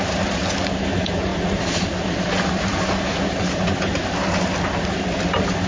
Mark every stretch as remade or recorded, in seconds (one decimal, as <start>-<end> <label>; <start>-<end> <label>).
0.0-5.7 recorded